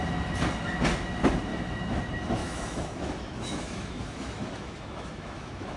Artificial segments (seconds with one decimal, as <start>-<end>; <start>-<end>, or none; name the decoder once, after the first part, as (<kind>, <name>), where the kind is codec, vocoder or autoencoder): 1.5-2.0 (autoencoder, DAC-VAE); 2.4-5.8